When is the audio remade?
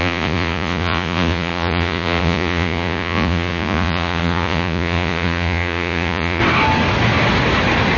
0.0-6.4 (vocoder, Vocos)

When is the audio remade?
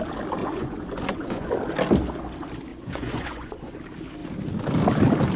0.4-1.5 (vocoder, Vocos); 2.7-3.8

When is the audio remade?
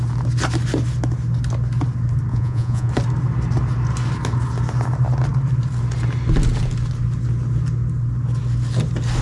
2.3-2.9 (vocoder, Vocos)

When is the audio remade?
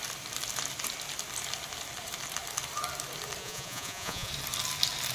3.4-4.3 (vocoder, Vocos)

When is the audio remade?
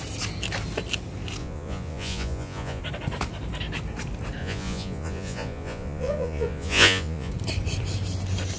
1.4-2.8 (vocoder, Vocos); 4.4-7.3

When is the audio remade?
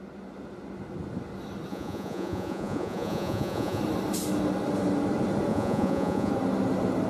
1.7-3.8 (vocoder, Vocos); 5.5-6.3